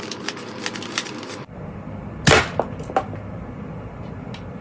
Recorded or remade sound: recorded